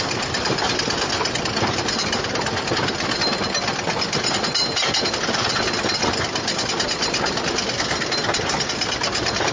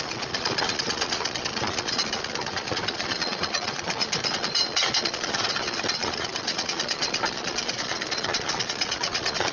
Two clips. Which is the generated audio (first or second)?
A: second